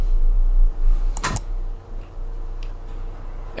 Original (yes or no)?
yes